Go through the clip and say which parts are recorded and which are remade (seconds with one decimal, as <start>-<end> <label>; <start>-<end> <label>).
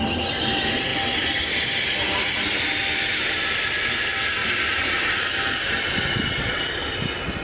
0.0-7.4 recorded